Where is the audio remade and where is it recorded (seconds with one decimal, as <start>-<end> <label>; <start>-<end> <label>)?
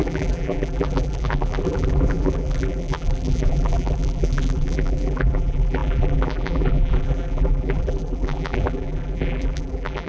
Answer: 0.0-10.1 remade